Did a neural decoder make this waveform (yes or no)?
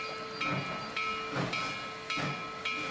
no